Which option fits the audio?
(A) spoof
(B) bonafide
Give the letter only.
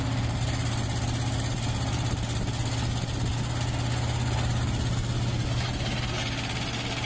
B